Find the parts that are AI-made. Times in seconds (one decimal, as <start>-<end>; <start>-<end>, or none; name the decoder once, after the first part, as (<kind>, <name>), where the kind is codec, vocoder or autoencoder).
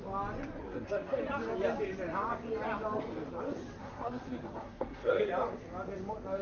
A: 0.6-1.2 (codec, SNAC); 3.8-5.3